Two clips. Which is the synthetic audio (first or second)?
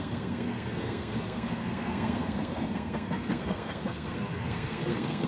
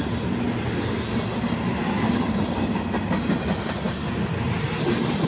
first